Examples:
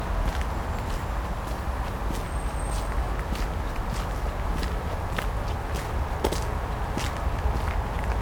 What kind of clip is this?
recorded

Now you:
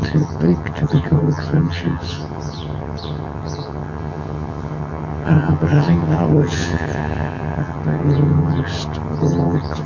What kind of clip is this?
remade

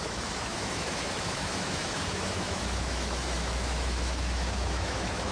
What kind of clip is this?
remade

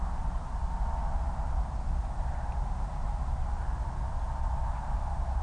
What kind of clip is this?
recorded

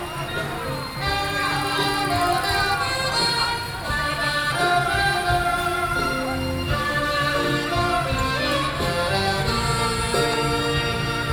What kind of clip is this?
recorded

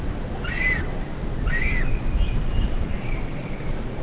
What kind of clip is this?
recorded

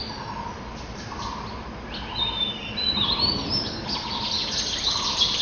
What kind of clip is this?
recorded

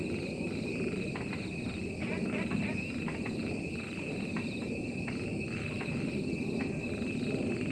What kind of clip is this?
recorded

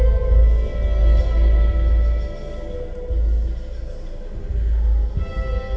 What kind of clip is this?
recorded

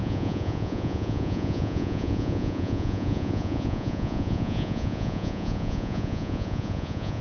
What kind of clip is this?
remade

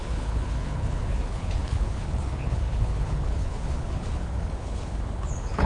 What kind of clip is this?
remade